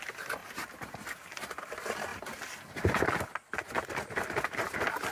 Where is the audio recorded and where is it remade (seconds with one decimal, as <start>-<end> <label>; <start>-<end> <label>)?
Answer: 0.0-5.1 recorded